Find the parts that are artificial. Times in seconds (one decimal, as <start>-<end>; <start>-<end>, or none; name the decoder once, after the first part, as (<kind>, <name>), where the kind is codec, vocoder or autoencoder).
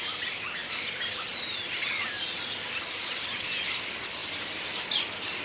none